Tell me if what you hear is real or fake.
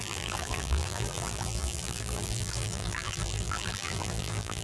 fake